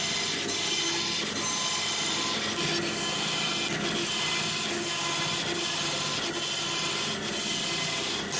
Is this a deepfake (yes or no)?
no